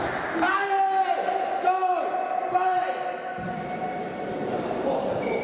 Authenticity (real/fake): real